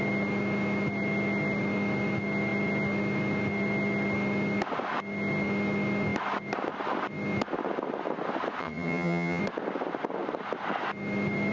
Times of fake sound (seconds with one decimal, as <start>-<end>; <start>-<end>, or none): 8.6-9.4

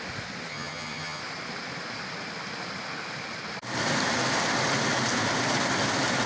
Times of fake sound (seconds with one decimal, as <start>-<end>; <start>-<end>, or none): 0.5-1.2

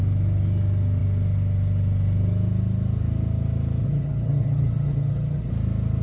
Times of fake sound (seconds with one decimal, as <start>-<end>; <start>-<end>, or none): 3.8-5.5

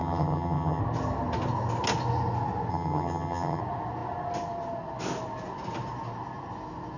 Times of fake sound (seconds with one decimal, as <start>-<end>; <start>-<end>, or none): 0.0-0.8; 2.7-3.6

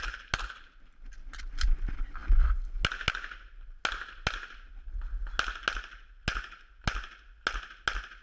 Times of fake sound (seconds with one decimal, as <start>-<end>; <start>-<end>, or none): none

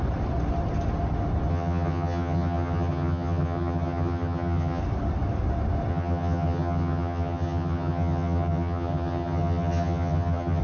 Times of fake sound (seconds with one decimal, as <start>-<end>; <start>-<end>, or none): 1.5-4.8; 5.9-10.6

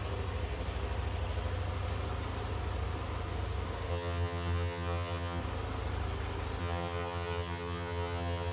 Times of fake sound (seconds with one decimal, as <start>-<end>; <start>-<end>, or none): 3.9-5.4; 6.6-8.5

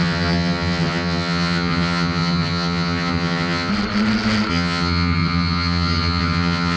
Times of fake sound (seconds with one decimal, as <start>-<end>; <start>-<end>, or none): 0.0-3.7; 4.5-6.8